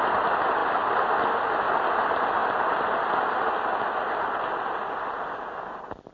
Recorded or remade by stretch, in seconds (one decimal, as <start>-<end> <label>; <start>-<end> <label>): 0.0-6.1 recorded